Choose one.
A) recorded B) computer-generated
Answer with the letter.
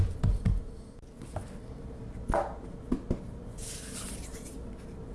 A